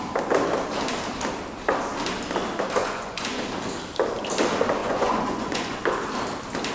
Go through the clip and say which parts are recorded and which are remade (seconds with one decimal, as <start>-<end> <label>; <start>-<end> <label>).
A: 0.0-2.8 recorded; 2.8-3.4 remade; 3.4-4.8 recorded; 4.8-5.8 remade; 5.8-6.7 recorded

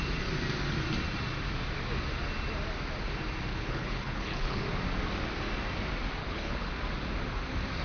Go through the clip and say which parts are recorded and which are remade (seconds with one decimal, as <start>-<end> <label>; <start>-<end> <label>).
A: 0.0-3.5 recorded; 3.5-4.6 remade; 4.6-6.2 recorded; 6.2-6.7 remade; 6.7-7.8 recorded